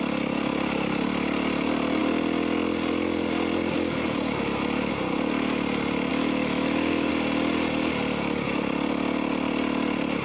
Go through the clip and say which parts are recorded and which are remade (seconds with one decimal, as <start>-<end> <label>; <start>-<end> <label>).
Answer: 0.0-6.1 recorded; 6.1-7.1 remade; 7.1-10.2 recorded